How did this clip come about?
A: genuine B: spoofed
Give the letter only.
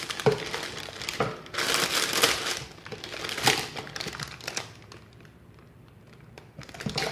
B